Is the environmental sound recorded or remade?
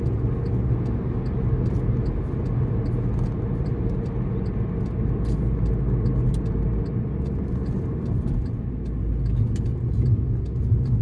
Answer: recorded